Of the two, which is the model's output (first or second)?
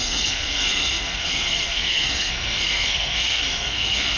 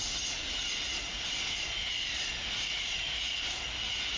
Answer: first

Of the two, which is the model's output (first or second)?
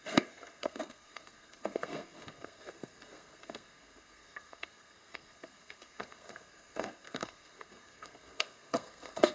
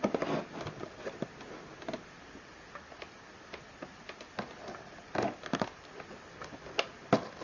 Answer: first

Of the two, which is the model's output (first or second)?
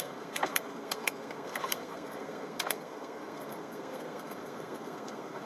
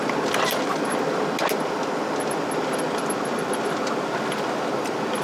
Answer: first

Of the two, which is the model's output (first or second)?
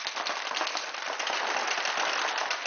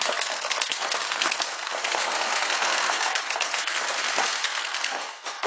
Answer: second